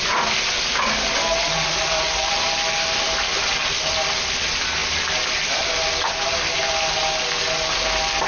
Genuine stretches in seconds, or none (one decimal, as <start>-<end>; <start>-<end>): 0.0-8.3